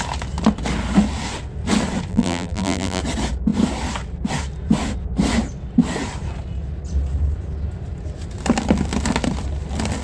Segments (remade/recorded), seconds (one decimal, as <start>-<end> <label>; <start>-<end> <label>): 0.0-2.1 recorded; 2.1-3.0 remade; 3.0-10.0 recorded